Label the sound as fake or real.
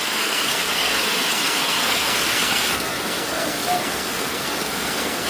fake